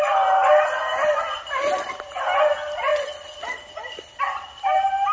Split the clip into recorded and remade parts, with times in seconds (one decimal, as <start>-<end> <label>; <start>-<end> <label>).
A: 0.0-5.1 recorded